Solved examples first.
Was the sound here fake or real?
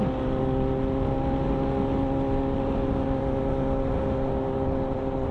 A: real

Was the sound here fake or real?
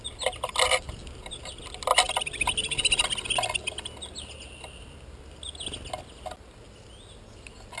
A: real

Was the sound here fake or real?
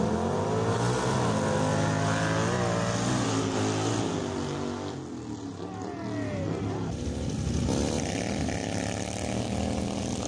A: real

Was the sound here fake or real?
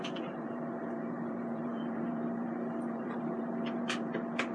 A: fake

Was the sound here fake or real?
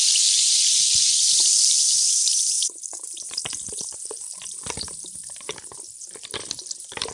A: fake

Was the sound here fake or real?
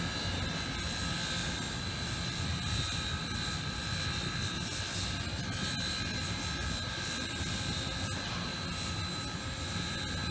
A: real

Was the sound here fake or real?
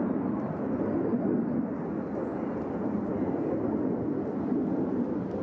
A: real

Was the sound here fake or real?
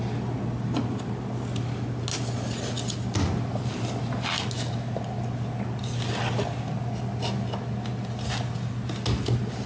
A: real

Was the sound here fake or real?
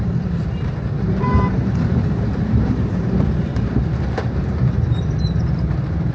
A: fake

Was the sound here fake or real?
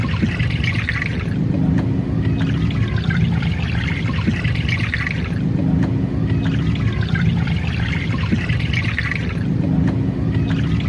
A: real